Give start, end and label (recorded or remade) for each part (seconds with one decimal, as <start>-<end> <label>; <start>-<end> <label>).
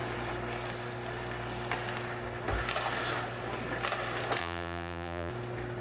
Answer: 0.0-4.4 recorded; 4.4-5.3 remade; 5.3-5.8 recorded